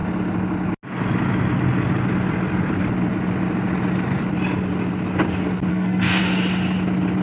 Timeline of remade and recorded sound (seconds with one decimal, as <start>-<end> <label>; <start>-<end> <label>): 0.0-5.7 recorded; 5.7-6.2 remade; 6.2-7.2 recorded